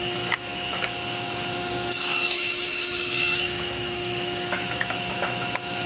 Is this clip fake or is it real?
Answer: fake